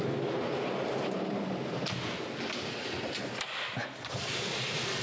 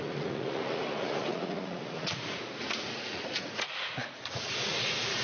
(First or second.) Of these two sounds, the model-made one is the second